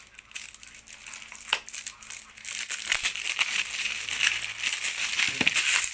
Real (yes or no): yes